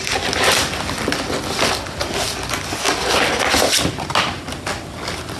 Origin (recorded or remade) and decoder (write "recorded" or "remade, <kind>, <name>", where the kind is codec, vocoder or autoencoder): recorded